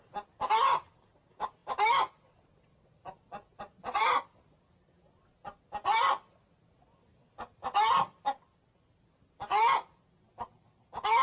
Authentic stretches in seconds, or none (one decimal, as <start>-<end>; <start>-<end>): 0.0-11.2